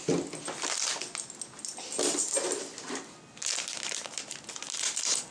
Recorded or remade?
recorded